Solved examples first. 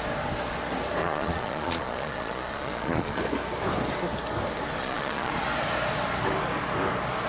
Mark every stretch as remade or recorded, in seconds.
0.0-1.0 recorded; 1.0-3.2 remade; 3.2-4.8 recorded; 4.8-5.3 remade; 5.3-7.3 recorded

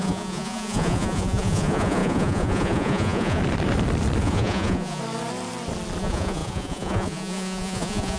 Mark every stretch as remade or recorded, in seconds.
0.0-3.4 remade; 3.4-4.2 recorded; 4.2-5.0 remade; 5.0-6.0 recorded; 6.0-8.2 remade

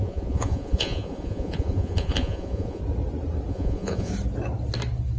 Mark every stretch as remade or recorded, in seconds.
0.0-2.8 remade; 2.8-3.5 recorded; 3.5-4.1 remade; 4.1-5.2 recorded